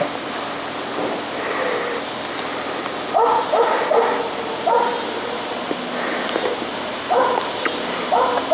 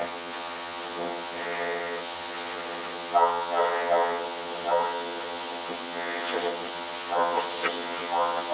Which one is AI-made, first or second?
second